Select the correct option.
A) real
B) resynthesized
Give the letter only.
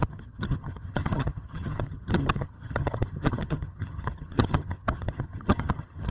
B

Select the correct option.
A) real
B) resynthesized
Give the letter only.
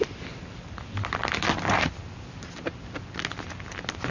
A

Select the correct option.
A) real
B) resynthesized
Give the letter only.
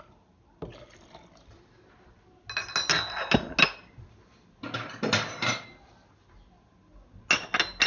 A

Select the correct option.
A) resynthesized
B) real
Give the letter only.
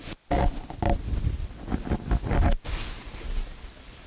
B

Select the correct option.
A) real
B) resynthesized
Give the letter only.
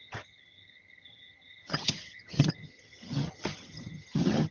B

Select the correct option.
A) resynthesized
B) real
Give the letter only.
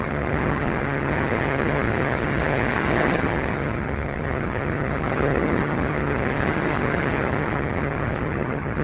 A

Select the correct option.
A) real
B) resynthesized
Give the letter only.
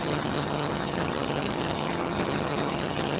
B